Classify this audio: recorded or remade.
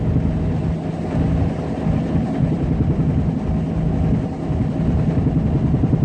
recorded